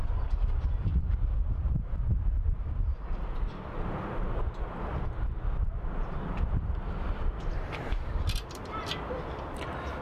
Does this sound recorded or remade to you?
remade